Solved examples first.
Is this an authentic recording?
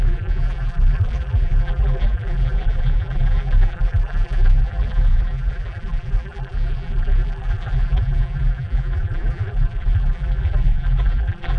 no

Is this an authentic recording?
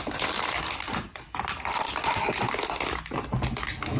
yes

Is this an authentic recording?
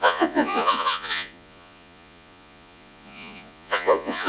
no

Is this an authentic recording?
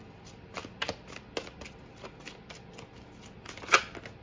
yes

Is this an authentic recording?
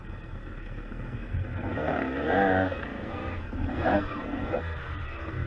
no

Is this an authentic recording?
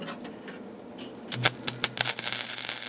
yes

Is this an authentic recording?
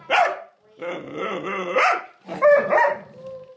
yes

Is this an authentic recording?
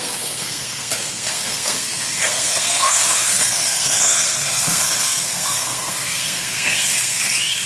no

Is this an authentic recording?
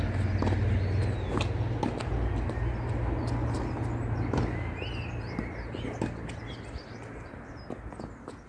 yes